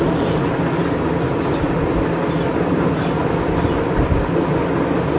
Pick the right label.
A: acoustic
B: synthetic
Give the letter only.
A